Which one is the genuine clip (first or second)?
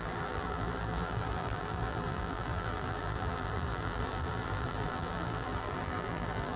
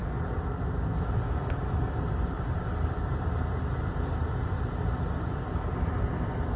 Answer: second